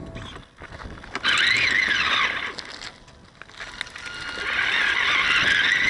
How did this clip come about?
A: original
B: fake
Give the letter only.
A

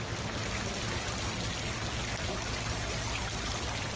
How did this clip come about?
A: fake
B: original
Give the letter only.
B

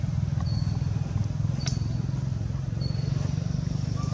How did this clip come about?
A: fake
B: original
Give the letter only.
B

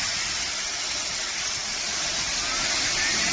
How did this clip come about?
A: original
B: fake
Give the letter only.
A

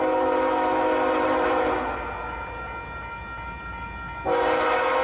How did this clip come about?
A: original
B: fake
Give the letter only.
A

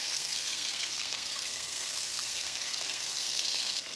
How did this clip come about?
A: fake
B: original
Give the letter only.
A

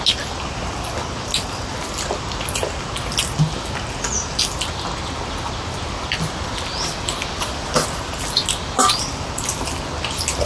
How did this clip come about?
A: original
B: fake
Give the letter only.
A